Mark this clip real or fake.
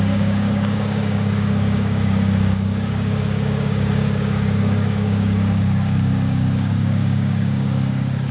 fake